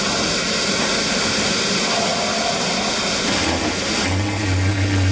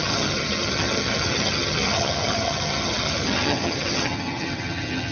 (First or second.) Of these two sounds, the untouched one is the first